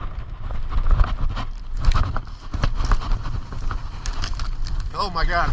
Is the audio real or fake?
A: real